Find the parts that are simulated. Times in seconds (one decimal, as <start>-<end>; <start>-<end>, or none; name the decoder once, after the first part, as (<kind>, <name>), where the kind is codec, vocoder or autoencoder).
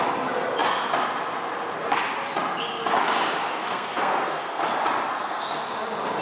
3.5-4.6 (codec, SNAC); 5.1-5.7